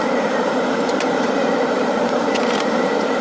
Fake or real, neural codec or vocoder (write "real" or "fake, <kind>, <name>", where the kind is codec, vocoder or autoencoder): fake, vocoder, BigVGAN v2